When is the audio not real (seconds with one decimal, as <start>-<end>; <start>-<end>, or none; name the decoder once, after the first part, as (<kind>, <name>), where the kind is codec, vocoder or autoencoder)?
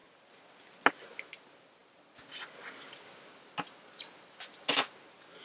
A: none